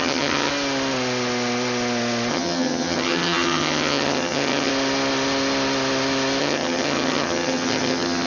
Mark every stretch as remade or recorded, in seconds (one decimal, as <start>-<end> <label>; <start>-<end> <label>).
0.0-0.5 remade; 0.5-2.3 recorded; 2.3-4.7 remade; 4.7-6.4 recorded; 6.4-8.3 remade